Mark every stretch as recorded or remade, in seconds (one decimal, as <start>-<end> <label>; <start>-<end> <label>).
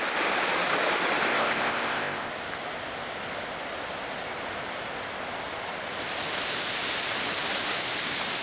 0.0-1.3 recorded; 1.3-2.3 remade; 2.3-8.4 recorded